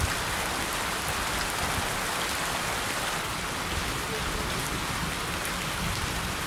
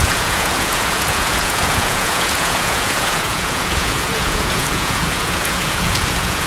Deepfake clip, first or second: second